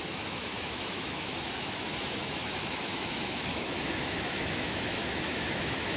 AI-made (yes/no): yes